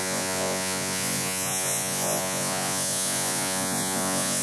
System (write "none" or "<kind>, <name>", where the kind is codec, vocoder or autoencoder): vocoder, Vocos